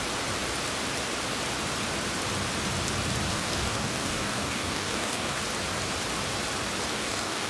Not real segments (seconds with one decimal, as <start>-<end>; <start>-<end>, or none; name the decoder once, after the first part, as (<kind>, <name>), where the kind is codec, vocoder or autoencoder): 3.3-5.4 (codec, DAC); 6.9-7.5